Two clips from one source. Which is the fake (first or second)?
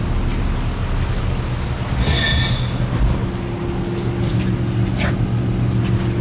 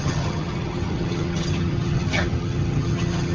second